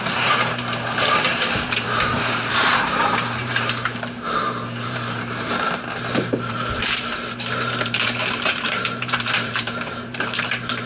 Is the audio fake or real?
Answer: fake